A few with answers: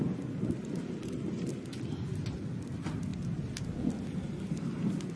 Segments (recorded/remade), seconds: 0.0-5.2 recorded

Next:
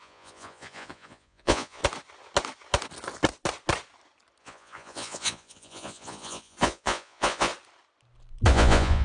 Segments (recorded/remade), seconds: 0.0-1.8 remade; 1.8-4.4 recorded; 4.4-7.5 remade; 7.5-8.5 recorded; 8.5-9.0 remade

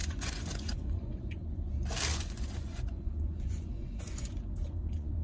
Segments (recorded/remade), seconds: 0.0-1.7 remade; 1.7-2.1 recorded; 2.1-5.2 remade

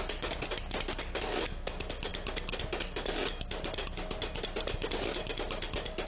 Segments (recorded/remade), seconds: 0.0-6.1 recorded

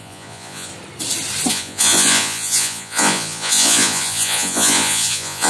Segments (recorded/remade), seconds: 0.0-0.7 remade; 0.7-1.5 recorded; 1.5-5.5 remade